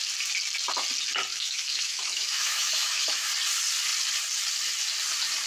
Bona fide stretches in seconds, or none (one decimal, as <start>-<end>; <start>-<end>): 0.0-1.3; 3.3-5.5